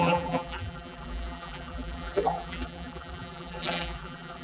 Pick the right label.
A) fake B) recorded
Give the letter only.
A